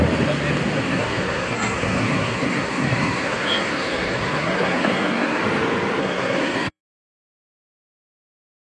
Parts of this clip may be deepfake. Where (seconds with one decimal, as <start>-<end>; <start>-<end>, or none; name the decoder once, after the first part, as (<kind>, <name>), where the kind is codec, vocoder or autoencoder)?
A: 0.8-5.4 (codec, SNAC); 6.0-6.8